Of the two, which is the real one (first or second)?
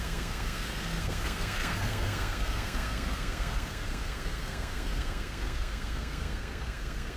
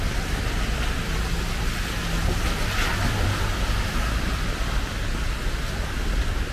second